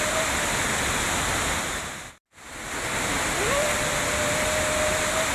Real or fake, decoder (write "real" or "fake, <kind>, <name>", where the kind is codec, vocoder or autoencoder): real